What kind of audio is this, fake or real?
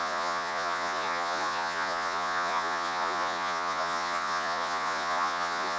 fake